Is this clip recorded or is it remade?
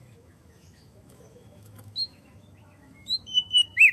remade